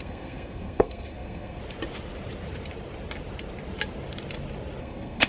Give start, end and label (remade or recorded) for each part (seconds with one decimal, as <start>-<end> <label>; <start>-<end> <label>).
0.0-1.6 remade; 1.6-4.8 recorded; 4.8-5.3 remade